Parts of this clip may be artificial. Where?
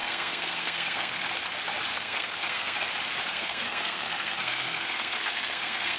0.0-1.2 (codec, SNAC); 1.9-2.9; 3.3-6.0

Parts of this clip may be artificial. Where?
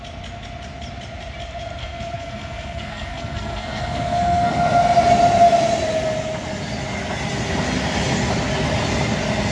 1.8-4.5 (codec, SNAC)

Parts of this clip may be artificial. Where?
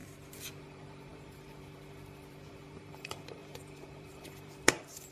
0.6-5.1 (vocoder, BigVGAN v2)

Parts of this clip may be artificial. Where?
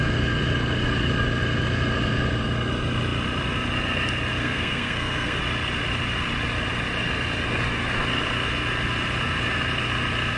4.4-5.4 (codec, SNAC)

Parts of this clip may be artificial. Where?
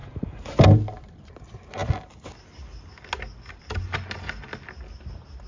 0.0-0.6 (vocoder, BigVGAN v2)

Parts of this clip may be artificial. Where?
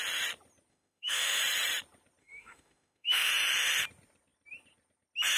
0.7-1.4 (autoencoder, DAC-VAE); 2.2-3.3